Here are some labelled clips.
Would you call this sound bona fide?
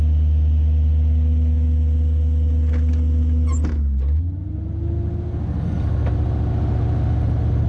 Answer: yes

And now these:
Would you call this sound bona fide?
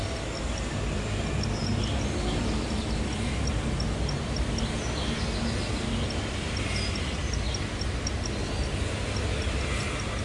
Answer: yes